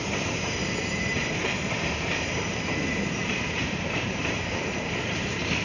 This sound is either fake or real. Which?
fake